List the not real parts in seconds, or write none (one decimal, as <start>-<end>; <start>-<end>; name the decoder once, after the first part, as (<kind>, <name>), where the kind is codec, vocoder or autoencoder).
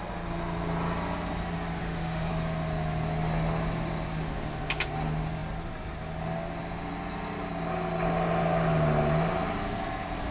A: 1.8-2.3 (autoencoder, DAC-VAE)